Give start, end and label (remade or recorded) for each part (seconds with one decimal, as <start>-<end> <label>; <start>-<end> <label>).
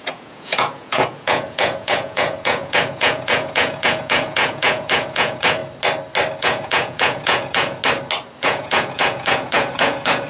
0.0-5.6 remade; 5.6-6.4 recorded; 6.4-7.8 remade; 7.8-8.4 recorded; 8.4-10.3 remade